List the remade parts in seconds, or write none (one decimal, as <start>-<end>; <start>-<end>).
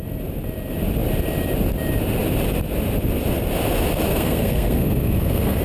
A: 4.1-5.6